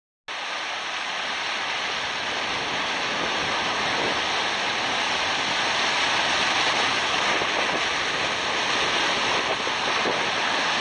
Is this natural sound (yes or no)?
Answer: yes